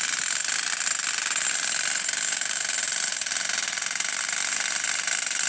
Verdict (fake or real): real